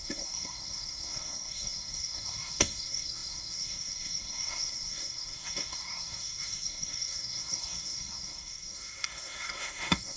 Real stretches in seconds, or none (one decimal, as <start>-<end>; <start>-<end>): none